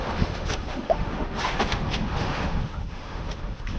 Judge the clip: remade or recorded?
remade